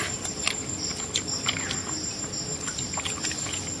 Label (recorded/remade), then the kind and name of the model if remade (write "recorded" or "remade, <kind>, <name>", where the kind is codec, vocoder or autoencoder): recorded